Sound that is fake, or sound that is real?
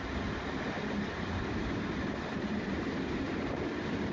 real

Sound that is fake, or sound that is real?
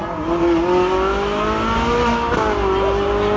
real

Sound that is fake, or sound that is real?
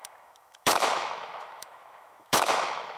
fake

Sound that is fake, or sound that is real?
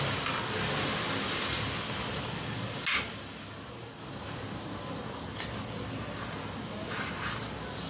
real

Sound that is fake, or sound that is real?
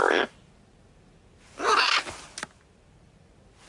real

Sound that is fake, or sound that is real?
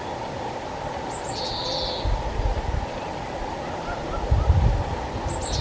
real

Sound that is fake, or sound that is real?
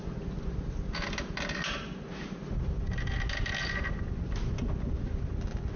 real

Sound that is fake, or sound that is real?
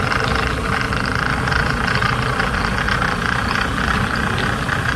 real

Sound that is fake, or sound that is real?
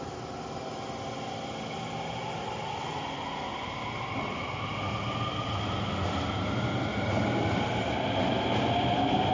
real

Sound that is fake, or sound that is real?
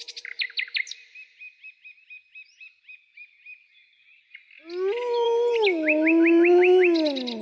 real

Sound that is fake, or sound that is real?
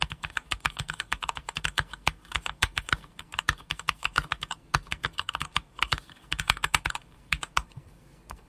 fake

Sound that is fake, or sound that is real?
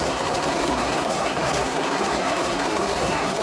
fake